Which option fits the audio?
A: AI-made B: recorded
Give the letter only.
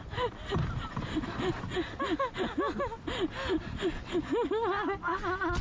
B